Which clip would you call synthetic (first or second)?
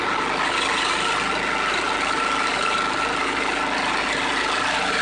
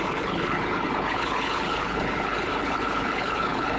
second